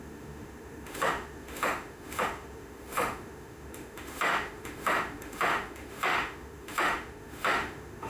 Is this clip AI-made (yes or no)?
yes